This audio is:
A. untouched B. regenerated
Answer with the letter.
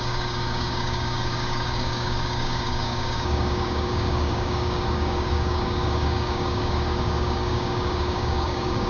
B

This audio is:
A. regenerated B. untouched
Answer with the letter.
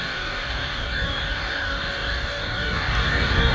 A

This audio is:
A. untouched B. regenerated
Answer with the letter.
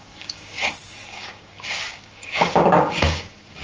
B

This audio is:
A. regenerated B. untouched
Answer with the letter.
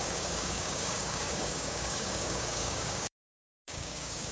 A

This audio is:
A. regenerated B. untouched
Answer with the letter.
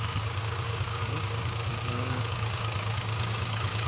A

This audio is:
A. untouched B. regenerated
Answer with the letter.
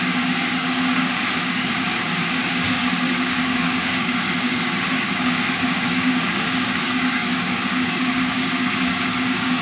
B